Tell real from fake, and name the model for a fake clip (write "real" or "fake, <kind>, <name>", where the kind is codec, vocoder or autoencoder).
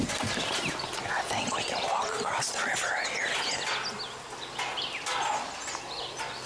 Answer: real